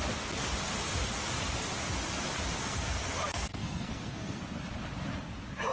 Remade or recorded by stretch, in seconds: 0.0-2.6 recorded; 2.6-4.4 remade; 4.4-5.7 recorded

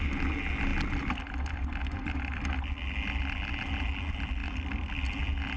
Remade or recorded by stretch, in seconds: 0.0-5.6 recorded

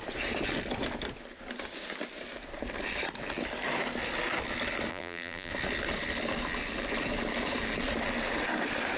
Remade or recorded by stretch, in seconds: 0.0-4.9 recorded; 4.9-5.5 remade; 5.5-9.0 recorded